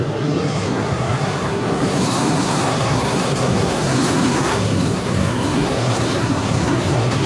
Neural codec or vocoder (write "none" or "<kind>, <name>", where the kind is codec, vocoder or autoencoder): codec, SNAC